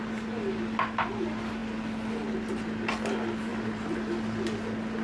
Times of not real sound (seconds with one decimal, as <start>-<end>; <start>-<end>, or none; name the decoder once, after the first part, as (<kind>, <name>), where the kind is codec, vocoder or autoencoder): 3.5-4.1 (vocoder, BigVGAN v2)